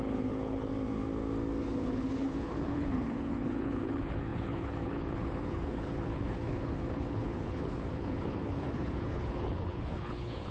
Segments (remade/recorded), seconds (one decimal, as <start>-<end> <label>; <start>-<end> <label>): 0.0-0.7 remade; 0.7-1.6 recorded; 1.6-10.5 remade